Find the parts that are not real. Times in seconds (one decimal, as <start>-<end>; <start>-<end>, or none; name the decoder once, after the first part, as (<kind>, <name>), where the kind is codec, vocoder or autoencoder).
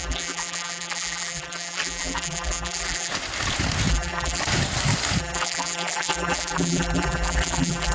0.0-3.1 (vocoder, BigVGAN v2); 3.9-4.4; 5.2-7.9